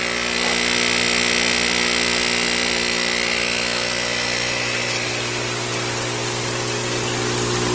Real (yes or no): yes